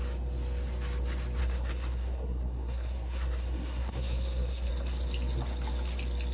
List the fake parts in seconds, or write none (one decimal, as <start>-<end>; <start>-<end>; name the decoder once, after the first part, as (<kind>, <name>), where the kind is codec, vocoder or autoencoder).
1.4-4.7 (codec, SNAC)